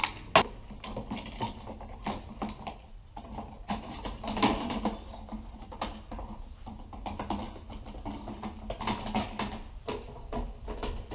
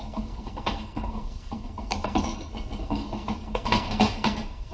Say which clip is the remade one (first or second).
second